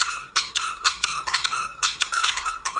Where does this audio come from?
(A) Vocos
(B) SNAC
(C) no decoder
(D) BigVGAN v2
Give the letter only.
B